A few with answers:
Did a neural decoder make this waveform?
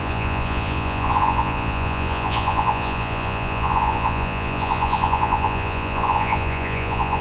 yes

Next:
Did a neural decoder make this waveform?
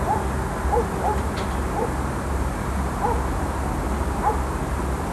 no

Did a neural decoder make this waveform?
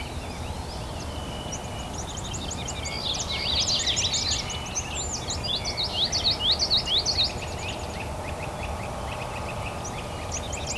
no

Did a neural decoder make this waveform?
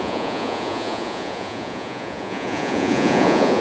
yes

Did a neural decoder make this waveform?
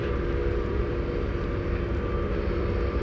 no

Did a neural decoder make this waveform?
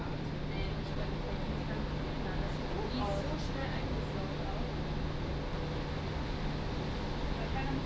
no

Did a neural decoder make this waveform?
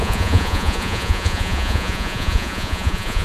yes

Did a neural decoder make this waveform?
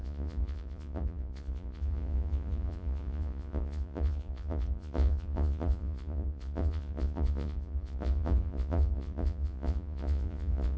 yes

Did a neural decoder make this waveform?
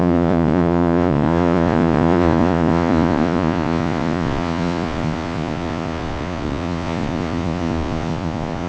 yes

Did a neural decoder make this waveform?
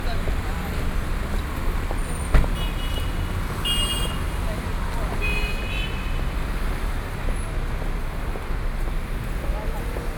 no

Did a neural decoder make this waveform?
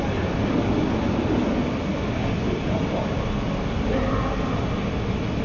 no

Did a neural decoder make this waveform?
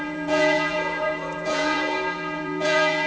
yes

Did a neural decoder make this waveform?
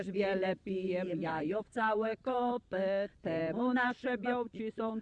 yes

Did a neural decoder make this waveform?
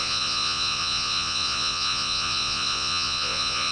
yes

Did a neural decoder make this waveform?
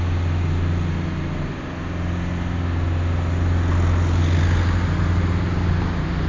no